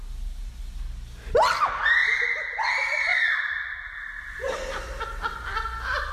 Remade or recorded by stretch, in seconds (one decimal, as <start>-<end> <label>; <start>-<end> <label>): 0.0-3.1 recorded; 3.1-6.1 remade